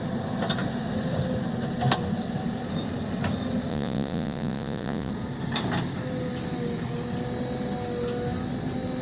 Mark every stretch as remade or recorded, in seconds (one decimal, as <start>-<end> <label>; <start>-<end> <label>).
0.0-3.7 recorded; 3.7-5.1 remade; 5.1-9.0 recorded